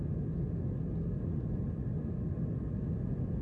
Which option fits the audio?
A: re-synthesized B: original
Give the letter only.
B